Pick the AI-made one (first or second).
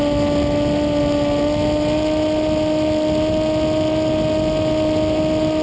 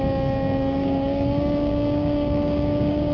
second